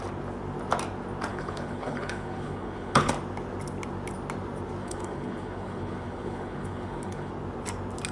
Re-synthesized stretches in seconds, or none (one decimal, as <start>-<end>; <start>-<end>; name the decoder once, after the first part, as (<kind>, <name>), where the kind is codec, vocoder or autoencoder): 1.3-3.1 (codec, HILCodec); 4.8-7.3